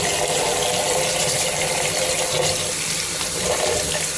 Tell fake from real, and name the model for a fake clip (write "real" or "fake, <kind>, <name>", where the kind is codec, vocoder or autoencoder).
real